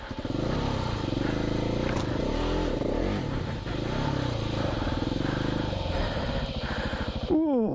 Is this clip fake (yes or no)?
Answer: no